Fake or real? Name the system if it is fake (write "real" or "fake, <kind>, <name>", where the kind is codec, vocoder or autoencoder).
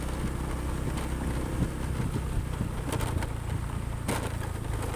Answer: real